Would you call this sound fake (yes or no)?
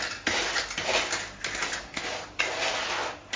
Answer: no